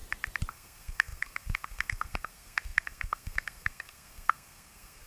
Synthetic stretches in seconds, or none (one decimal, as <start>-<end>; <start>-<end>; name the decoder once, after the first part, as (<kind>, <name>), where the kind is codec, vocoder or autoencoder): 0.5-5.1 (codec, SNAC)